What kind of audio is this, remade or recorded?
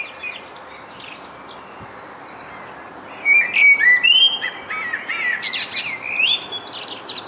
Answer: recorded